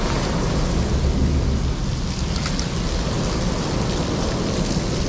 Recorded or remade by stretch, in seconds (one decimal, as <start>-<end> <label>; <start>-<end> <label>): 0.0-5.1 recorded